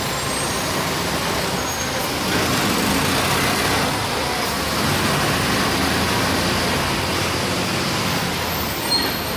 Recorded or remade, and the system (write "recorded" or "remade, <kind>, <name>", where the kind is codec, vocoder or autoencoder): recorded